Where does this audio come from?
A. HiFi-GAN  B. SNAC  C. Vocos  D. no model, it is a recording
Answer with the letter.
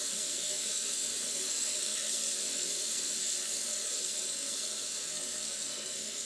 B